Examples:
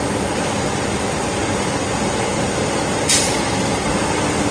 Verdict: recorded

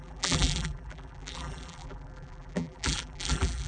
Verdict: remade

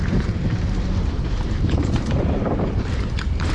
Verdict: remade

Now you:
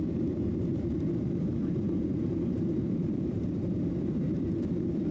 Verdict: remade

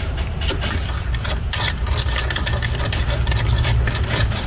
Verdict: remade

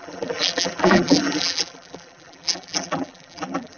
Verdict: remade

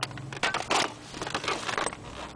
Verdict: recorded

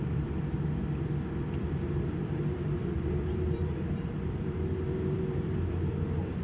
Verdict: remade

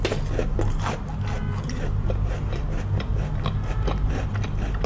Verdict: recorded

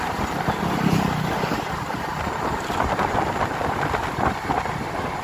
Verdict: recorded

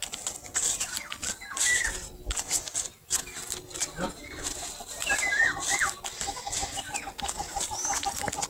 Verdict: recorded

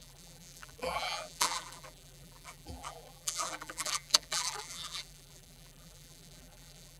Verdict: remade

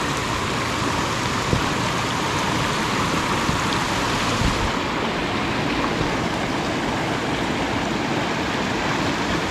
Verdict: recorded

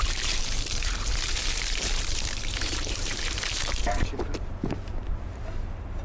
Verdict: remade